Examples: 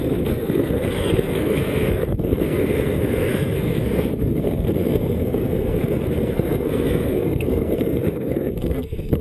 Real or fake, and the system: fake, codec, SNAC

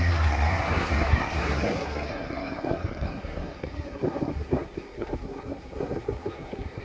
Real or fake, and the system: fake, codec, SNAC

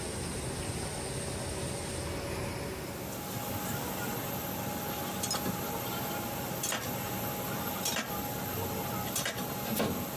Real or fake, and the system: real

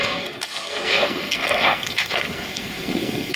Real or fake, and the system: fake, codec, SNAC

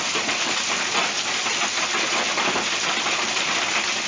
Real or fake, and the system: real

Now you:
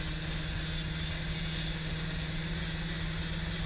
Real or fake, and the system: real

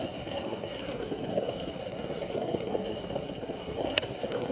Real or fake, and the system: fake, codec, SNAC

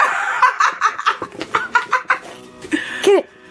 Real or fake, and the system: real